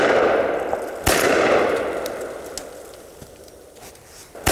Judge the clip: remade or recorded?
recorded